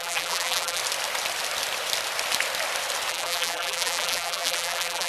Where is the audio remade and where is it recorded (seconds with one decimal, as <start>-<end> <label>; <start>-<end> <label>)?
0.0-0.8 remade; 0.8-3.1 recorded; 3.1-5.1 remade